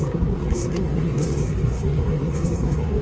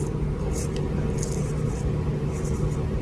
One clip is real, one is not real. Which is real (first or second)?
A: second